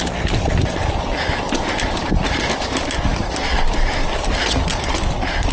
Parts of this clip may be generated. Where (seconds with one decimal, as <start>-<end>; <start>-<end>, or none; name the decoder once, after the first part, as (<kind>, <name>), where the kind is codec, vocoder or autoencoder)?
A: none